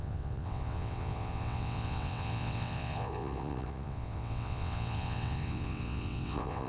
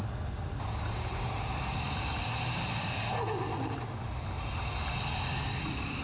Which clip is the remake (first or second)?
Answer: first